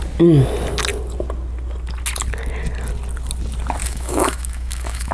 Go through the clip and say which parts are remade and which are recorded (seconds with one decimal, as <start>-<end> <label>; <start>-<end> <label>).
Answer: 0.0-3.8 recorded; 3.8-5.1 remade